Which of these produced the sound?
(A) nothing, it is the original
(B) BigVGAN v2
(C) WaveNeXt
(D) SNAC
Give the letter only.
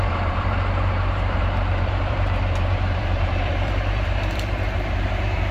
B